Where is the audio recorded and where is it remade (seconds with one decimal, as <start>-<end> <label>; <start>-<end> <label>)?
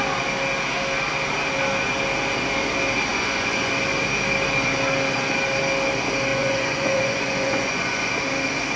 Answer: 0.0-3.1 recorded; 3.1-3.7 remade; 3.7-6.3 recorded; 6.3-8.1 remade; 8.1-8.8 recorded